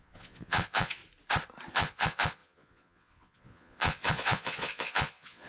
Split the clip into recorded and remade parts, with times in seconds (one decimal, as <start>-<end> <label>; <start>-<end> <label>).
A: 0.0-1.0 remade; 1.0-1.7 recorded; 1.7-5.5 remade